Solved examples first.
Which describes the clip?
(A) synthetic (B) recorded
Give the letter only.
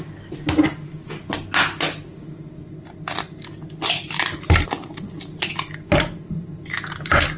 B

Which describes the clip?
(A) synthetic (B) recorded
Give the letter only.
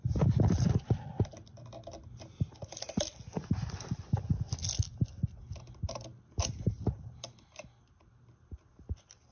B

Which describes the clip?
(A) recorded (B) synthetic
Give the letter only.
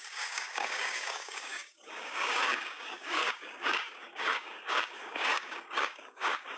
B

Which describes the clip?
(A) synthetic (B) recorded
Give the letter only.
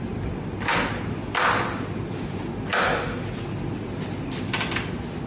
B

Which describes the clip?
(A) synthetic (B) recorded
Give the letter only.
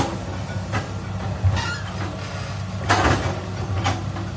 B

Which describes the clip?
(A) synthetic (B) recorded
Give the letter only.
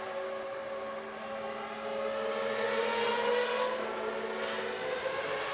B